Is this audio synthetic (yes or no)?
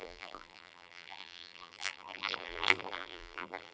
yes